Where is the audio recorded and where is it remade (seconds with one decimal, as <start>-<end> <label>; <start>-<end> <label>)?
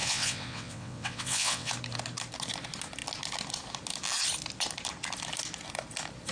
0.0-1.7 remade; 1.7-6.3 recorded